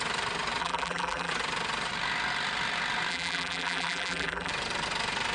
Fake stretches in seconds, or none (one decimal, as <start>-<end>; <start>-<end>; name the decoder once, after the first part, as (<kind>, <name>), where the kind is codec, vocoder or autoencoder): 0.6-1.3 (vocoder, BigVGAN v2); 3.1-4.5